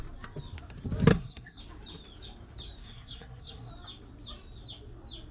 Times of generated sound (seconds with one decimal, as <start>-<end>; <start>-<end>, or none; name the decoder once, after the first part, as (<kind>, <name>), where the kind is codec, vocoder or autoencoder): 1.1-1.6 (codec, SNAC); 2.8-3.7